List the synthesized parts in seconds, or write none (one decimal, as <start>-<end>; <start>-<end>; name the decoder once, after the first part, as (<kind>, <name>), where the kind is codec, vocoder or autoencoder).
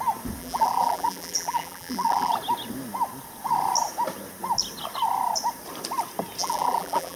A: 0.4-2.3 (vocoder, BigVGAN v2); 6.4-7.2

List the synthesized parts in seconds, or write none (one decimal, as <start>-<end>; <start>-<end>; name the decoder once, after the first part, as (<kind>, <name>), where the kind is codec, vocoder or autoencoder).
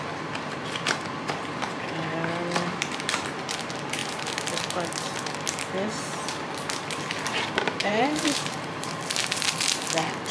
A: 7.8-9.0 (vocoder, BigVGAN v2)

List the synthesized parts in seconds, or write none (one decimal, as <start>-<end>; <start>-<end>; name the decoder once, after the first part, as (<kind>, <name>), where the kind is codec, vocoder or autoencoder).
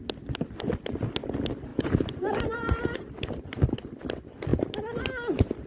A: 1.7-3.6 (vocoder, BigVGAN v2); 4.5-5.0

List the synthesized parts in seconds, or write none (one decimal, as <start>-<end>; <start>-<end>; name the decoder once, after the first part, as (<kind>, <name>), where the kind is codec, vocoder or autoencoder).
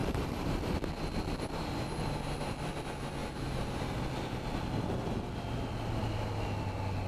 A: 0.0-0.7 (vocoder, BigVGAN v2); 3.2-3.8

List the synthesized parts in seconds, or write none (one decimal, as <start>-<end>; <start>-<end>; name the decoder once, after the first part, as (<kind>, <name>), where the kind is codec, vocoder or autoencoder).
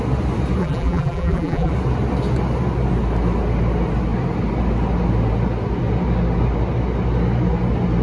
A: 0.6-1.7 (vocoder, BigVGAN v2)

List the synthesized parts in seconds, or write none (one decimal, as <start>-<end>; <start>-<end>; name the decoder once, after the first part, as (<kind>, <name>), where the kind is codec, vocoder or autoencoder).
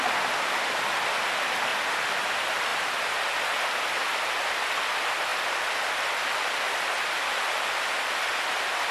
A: none